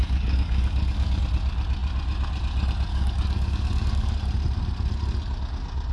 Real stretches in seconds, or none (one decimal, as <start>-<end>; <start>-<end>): 1.2-2.9; 4.1-5.9